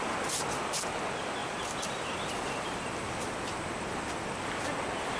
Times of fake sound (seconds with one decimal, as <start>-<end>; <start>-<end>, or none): 1.4-3.1